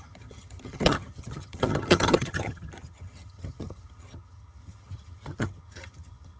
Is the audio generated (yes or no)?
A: yes